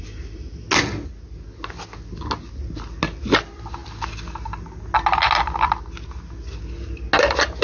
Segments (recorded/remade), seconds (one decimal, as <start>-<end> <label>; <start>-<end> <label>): 0.0-7.6 recorded